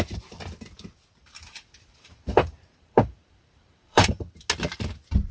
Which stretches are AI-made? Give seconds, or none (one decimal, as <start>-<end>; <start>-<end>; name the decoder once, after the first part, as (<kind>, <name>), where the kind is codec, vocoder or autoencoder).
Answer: 1.2-4.4 (vocoder, BigVGAN v2)